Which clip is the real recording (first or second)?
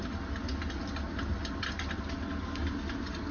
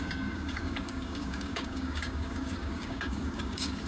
first